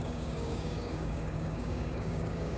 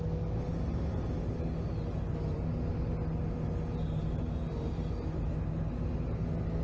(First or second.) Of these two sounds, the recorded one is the second